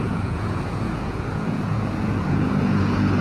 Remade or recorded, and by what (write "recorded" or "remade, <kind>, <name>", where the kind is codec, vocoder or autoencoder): remade, vocoder, Vocos